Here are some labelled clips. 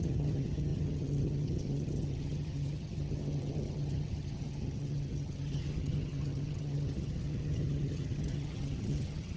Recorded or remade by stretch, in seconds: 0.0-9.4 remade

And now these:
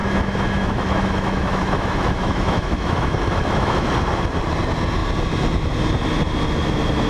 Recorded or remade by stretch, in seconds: 0.0-3.8 remade; 3.8-7.1 recorded